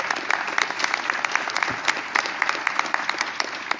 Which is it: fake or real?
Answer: real